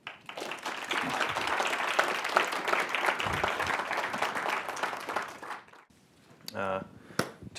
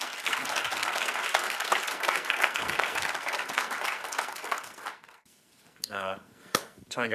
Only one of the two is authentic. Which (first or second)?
first